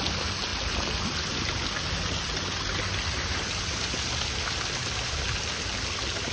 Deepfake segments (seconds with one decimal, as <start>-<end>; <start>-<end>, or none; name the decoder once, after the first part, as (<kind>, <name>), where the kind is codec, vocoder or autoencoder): none